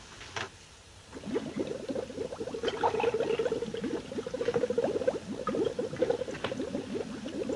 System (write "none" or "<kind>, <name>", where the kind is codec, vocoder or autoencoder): none